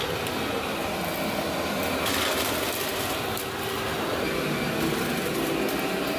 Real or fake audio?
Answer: real